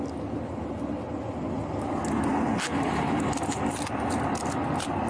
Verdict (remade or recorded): recorded